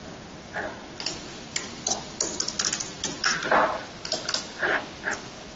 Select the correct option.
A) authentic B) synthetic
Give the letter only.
A